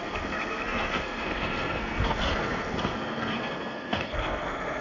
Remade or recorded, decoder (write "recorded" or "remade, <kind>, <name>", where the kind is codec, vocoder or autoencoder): remade, codec, SNAC